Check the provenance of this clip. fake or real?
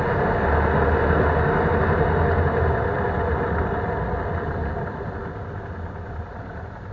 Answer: real